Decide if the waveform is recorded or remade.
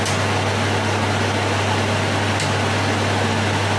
recorded